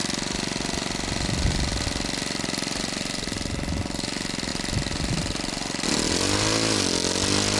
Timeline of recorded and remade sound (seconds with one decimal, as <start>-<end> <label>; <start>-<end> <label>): 0.0-7.6 recorded